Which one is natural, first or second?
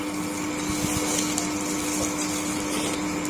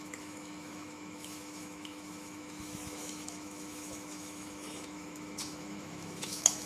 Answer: first